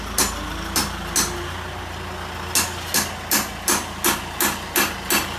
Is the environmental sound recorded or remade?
recorded